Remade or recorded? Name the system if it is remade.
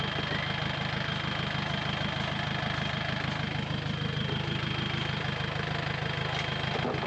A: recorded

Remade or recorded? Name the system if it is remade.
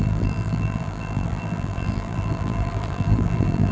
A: remade, vocoder, BigVGAN v2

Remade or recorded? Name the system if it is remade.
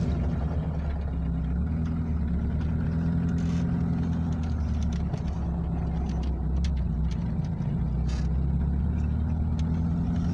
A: recorded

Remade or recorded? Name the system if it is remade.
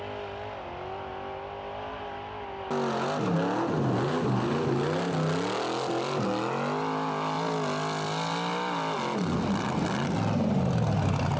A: recorded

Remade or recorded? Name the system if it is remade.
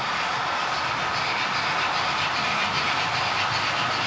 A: recorded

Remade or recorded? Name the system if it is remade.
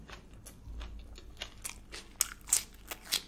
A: recorded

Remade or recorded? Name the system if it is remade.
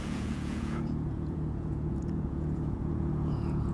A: remade, vocoder, Vocos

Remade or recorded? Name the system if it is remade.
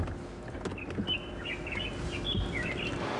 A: recorded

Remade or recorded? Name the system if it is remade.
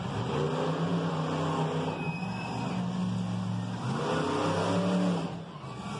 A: recorded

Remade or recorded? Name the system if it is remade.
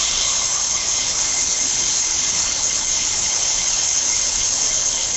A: remade, codec, HILCodec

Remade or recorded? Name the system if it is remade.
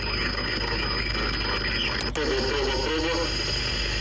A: recorded